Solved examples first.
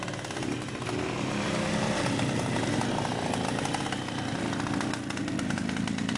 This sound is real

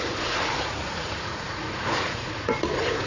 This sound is fake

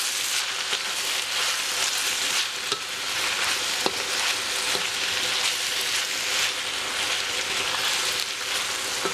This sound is real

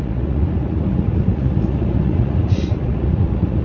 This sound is fake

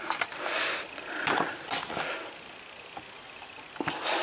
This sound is real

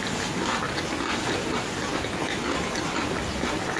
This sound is real